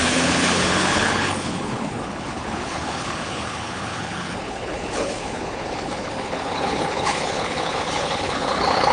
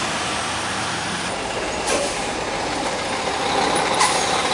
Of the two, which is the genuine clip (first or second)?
second